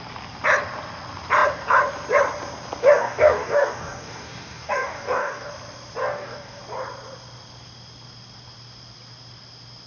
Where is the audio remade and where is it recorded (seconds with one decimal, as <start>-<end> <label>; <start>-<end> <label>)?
0.0-2.8 recorded; 2.8-5.5 remade; 5.5-6.0 recorded; 6.0-6.6 remade; 6.6-9.9 recorded